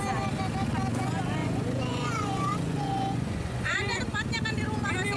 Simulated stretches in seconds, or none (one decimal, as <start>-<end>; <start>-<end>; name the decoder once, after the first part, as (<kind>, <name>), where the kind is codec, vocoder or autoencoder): 1.4-4.0 (vocoder, Vocos)